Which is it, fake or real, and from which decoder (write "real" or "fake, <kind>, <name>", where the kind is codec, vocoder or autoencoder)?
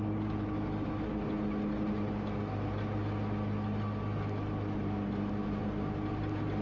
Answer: real